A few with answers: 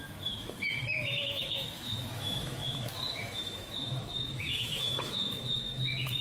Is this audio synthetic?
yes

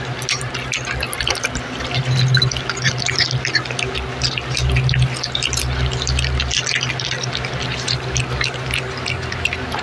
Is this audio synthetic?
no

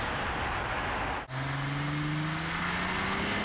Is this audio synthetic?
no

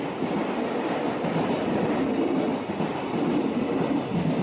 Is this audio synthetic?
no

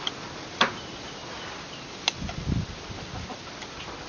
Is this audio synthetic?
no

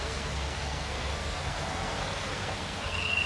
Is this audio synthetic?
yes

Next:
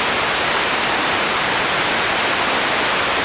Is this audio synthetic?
no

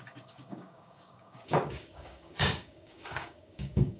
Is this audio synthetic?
yes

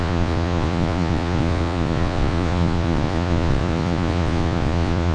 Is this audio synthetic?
yes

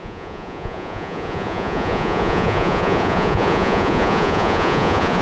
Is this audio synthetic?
yes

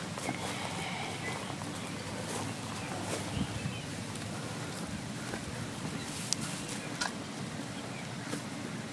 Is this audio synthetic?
no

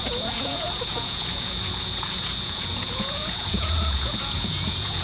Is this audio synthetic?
yes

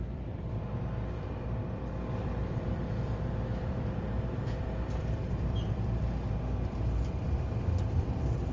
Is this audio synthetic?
yes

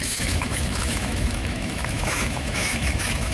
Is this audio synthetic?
yes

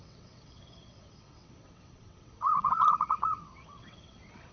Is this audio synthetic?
yes